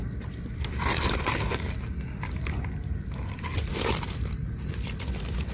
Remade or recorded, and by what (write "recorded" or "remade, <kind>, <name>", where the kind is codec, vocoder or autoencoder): recorded